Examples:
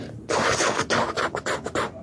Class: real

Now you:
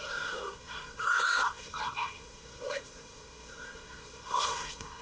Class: fake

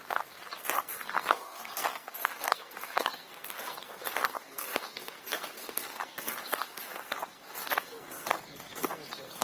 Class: fake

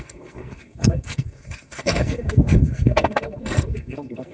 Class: fake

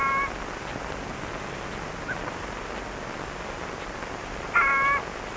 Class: real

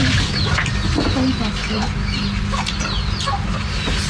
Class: real